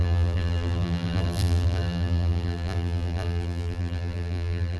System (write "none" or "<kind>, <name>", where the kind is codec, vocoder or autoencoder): vocoder, BigVGAN v2